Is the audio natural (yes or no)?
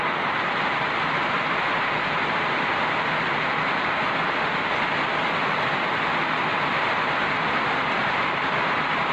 yes